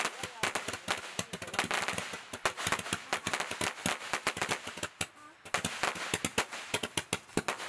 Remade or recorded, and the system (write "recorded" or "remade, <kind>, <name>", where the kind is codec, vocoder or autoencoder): recorded